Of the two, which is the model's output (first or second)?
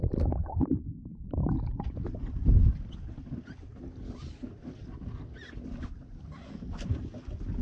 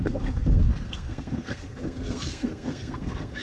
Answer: second